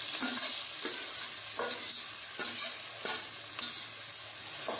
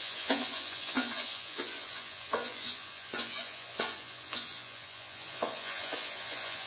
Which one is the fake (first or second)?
second